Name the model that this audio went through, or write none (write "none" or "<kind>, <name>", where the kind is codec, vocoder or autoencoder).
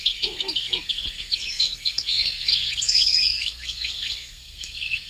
codec, SNAC